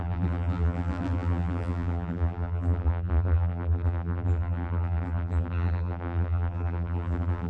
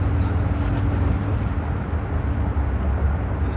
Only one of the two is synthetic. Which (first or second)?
first